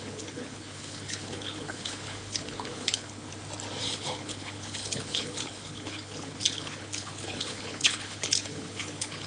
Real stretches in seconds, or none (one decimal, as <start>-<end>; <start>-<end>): 3.3-3.8